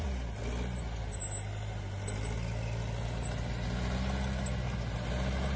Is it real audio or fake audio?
real